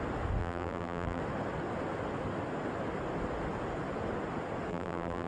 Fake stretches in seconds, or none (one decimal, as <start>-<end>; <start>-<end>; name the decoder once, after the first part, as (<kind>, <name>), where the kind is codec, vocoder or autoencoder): 0.4-1.2 (vocoder, BigVGAN v2); 4.7-5.3